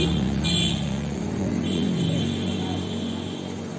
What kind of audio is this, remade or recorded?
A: remade